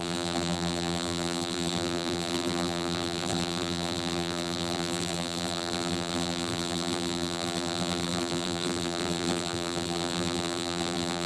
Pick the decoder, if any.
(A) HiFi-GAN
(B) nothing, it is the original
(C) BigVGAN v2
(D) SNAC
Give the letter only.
C